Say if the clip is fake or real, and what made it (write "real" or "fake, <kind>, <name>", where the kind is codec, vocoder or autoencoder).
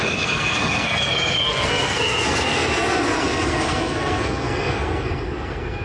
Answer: fake, codec, SNAC